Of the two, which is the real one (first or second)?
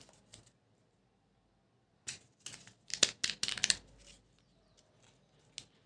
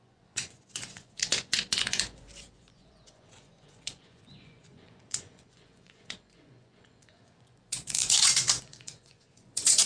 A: first